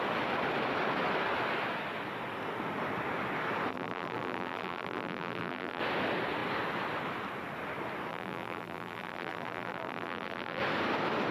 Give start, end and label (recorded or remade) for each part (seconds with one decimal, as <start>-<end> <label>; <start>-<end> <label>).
0.0-3.7 recorded; 3.7-5.8 remade; 5.8-8.1 recorded; 8.1-10.6 remade; 10.6-11.3 recorded